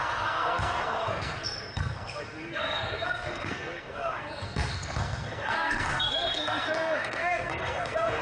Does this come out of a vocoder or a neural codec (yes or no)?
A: yes